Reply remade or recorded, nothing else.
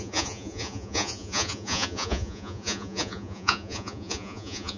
remade